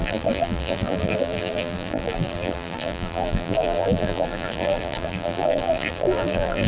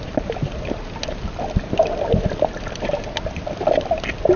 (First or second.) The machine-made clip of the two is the first